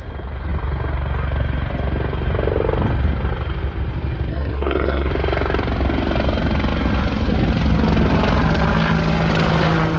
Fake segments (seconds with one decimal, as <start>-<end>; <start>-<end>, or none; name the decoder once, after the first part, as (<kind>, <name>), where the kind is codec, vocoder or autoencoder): 4.3-5.1 (codec, SNAC)